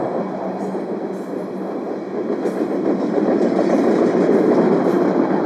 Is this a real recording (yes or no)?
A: yes